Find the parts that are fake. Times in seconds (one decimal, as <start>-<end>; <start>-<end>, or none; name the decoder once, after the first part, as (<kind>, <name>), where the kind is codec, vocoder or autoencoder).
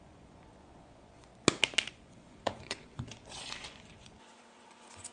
0.0-1.3 (vocoder, Vocos); 1.9-5.1